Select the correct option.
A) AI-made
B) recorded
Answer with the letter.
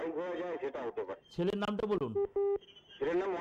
B